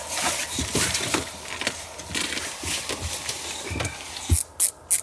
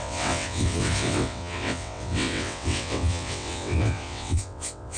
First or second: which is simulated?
second